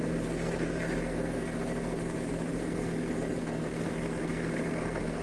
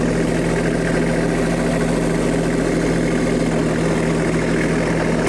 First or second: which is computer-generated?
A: first